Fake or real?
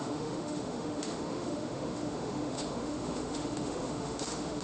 fake